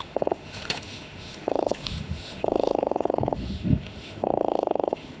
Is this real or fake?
fake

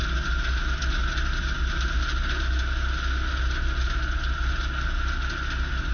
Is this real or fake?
real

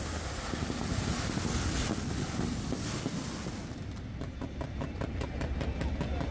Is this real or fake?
real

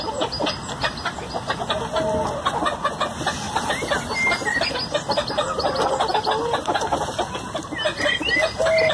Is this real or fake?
real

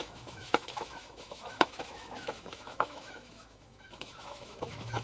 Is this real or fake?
fake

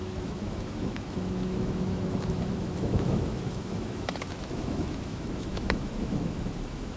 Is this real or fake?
fake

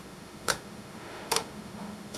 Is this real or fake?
fake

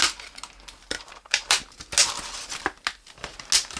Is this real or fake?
real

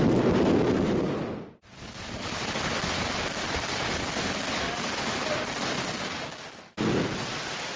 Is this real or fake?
real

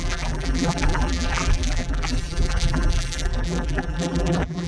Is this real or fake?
fake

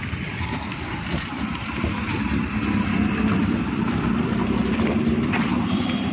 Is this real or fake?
fake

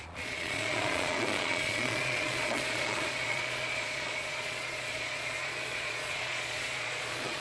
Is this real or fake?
fake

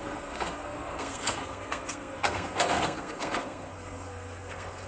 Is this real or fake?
fake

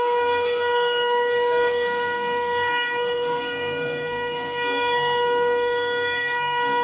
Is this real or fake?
fake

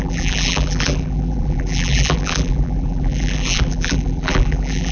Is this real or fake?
fake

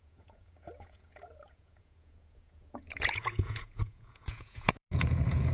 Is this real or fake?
fake